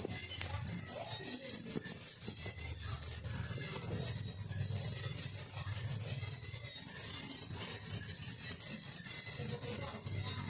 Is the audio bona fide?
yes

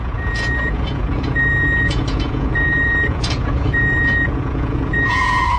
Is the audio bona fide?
no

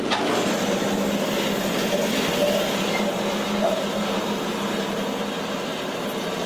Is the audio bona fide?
yes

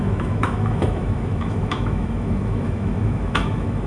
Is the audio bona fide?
no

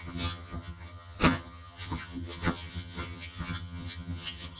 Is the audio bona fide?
no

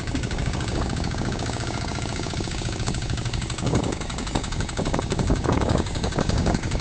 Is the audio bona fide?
no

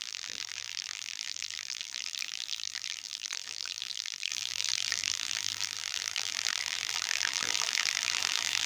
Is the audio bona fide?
no